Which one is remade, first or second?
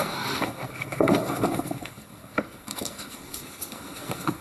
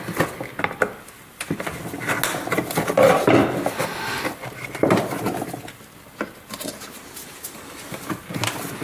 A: first